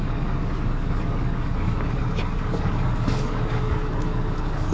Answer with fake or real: fake